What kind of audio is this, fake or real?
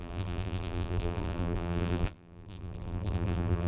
fake